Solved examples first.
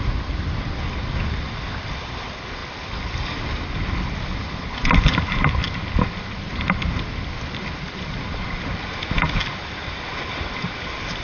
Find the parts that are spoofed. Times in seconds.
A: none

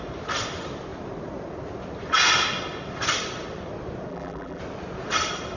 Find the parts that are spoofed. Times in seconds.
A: 4.1-4.6

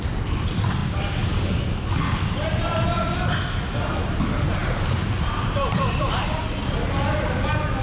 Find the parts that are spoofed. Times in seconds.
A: 4.6-6.4

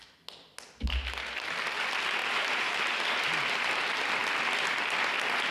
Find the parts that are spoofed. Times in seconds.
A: 2.2-3.1

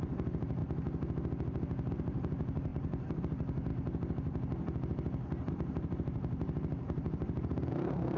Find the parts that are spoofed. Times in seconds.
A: 0.0-0.6; 1.9-3.7; 5.5-8.2

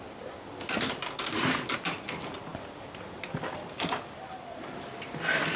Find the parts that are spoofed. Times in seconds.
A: 2.5-4.0

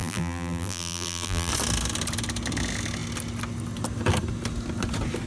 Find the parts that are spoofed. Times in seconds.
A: 0.0-1.5